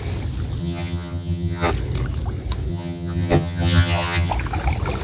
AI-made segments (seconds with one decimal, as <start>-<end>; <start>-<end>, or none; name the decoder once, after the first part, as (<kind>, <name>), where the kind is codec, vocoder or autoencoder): 0.6-1.7 (vocoder, HiFi-GAN); 2.7-4.3